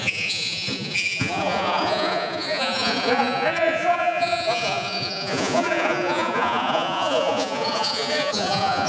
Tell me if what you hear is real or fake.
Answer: fake